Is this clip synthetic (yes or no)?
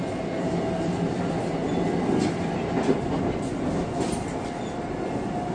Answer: no